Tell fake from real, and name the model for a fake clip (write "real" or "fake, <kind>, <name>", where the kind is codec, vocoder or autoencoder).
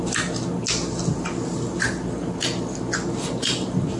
real